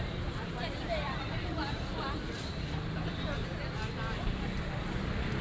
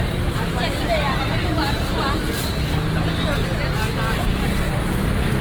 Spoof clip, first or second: first